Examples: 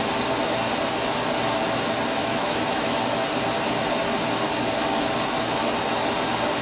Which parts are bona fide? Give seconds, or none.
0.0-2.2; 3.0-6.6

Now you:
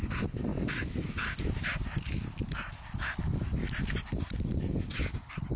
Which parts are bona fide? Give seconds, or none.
0.5-3.9

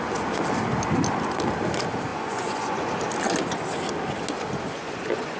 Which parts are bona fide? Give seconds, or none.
0.0-2.1; 2.9-4.8

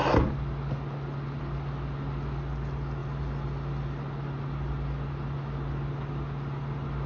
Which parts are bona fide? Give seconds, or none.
0.0-7.1

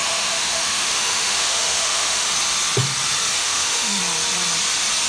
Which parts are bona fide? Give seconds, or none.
2.3-3.4; 4.0-5.1

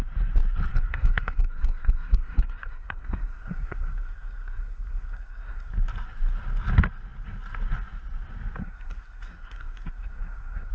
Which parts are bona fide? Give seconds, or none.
0.0-0.7; 5.7-8.6

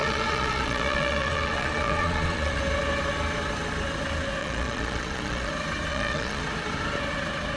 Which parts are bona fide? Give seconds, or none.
2.6-4.4; 5.5-5.9; 6.4-7.6

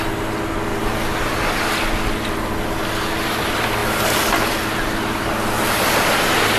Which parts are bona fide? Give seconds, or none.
0.0-6.6